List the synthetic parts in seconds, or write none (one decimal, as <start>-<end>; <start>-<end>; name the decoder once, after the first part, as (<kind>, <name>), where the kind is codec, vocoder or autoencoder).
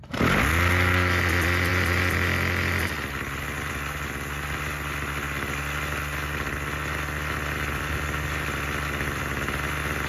none